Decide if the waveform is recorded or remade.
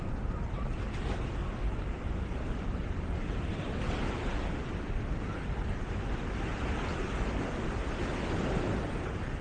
recorded